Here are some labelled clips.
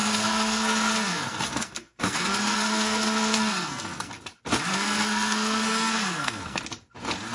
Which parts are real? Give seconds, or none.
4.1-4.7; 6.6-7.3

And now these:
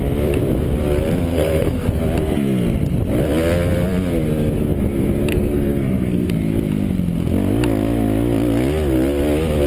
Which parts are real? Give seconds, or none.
0.0-1.3; 2.0-5.3; 6.3-9.7

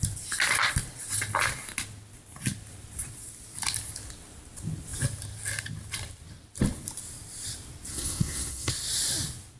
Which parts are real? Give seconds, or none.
0.0-7.9; 8.7-9.6

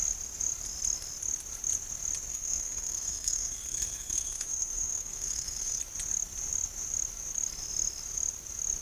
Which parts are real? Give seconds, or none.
0.0-2.3; 5.8-8.8

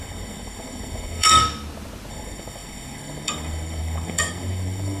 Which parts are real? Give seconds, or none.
1.4-2.1